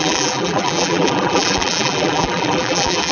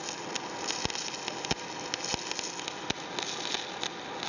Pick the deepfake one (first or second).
first